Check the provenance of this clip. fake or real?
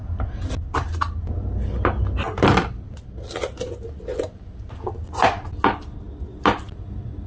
real